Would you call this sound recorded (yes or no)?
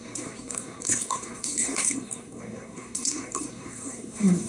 no